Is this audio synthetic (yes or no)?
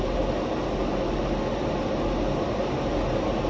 no